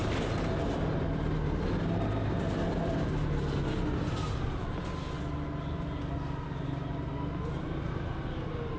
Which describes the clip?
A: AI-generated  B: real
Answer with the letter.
B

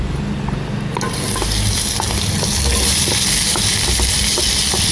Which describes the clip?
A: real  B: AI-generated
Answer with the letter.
A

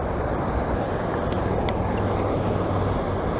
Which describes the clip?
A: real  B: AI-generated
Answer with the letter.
A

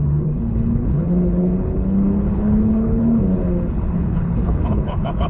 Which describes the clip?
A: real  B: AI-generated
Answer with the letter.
B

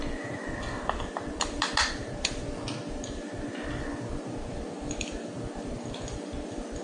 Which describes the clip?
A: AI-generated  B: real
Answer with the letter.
B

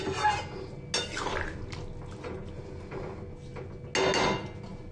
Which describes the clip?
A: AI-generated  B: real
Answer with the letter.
B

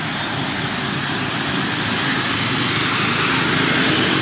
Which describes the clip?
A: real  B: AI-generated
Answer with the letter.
A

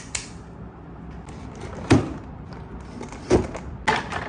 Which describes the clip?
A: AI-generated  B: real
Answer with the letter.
B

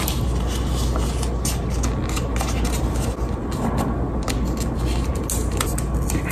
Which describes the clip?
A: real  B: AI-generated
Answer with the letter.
A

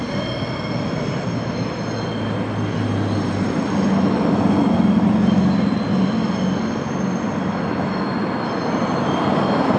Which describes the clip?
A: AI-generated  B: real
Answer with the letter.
B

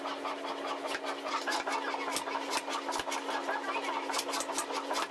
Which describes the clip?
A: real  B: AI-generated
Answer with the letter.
A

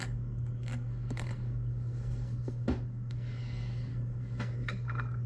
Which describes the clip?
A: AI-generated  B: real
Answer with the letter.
A